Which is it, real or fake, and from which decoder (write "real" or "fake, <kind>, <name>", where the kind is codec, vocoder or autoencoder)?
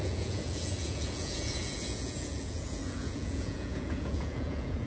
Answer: fake, vocoder, Vocos